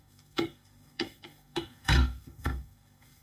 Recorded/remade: remade